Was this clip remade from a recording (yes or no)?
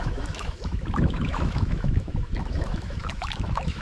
yes